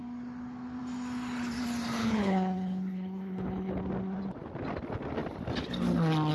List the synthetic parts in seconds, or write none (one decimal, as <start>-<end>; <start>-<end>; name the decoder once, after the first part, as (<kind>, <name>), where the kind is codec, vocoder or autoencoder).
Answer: 2.0-3.8 (codec, HILCodec)